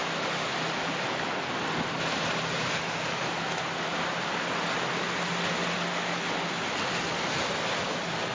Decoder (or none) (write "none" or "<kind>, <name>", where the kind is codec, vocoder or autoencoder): none